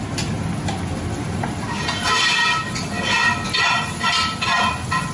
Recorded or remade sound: recorded